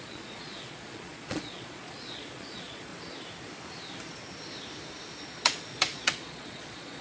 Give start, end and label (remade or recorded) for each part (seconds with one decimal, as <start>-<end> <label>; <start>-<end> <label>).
0.0-2.9 remade; 2.9-5.2 recorded; 5.2-7.0 remade